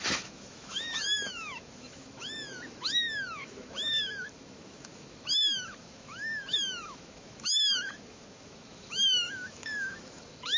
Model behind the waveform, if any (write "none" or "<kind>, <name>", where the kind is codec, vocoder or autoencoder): autoencoder, DAC-VAE